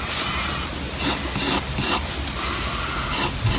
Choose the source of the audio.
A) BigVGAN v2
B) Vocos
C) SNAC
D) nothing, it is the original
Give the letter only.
D